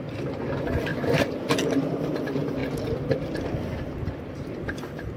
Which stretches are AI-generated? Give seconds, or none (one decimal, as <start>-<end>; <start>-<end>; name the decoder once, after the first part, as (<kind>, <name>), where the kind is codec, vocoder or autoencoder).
none

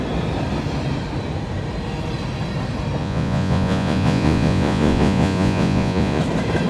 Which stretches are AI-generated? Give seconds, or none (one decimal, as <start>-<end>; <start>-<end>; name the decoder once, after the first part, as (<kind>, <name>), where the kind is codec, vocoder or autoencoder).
3.0-6.2 (vocoder, Vocos)

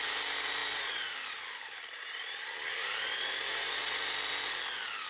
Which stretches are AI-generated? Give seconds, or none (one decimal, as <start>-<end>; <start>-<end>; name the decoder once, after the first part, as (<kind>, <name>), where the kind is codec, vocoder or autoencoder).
none